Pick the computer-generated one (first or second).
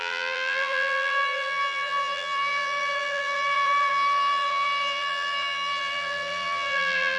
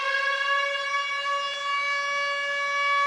first